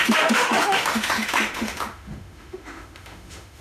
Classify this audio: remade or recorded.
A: remade